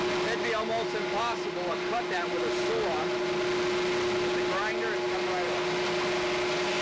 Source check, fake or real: real